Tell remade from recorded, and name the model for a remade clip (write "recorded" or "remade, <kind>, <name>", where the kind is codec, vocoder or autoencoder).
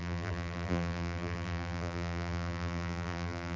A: remade, vocoder, BigVGAN v2